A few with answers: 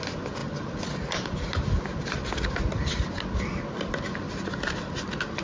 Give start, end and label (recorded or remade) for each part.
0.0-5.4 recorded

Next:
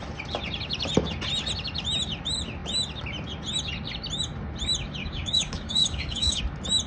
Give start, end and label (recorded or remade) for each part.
0.0-5.0 recorded; 5.0-6.4 remade; 6.4-6.9 recorded

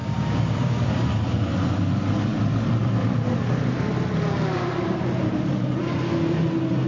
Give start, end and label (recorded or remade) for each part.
0.0-0.9 remade; 0.9-6.9 recorded

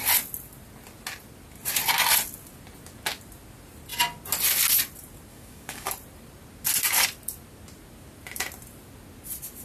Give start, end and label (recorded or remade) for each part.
0.0-5.3 recorded; 5.3-5.9 remade; 5.9-9.6 recorded

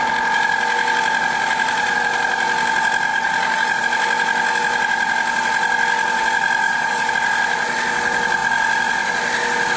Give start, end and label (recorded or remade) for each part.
0.0-3.1 recorded; 3.1-3.8 remade; 3.8-6.6 recorded; 6.6-7.1 remade; 7.1-9.8 recorded